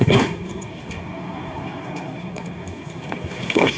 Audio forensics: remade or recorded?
remade